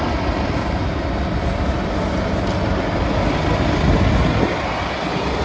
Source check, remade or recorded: recorded